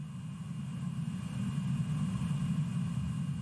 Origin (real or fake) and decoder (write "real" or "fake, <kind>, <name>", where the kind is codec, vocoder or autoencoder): real